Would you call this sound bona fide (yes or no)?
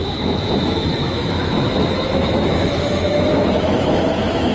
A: no